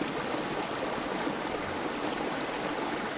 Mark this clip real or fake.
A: real